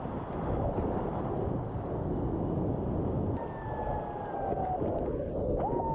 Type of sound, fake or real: real